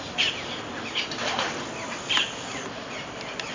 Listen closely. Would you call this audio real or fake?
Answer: real